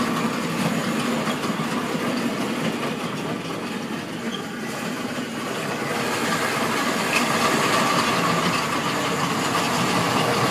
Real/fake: real